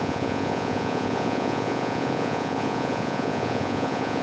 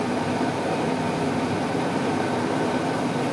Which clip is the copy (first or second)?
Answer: first